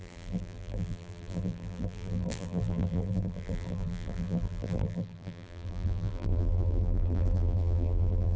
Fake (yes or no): yes